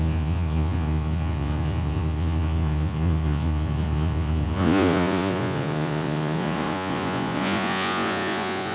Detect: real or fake fake